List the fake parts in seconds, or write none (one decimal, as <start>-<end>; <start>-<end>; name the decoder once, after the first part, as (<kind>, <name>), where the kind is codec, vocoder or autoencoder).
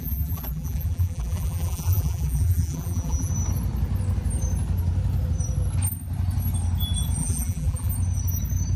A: 0.0-3.3 (vocoder, BigVGAN v2); 7.2-7.9